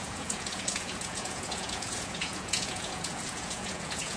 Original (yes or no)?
no